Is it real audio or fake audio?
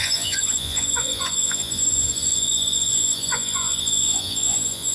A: fake